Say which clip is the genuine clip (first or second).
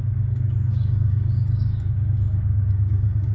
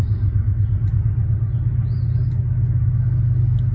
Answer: second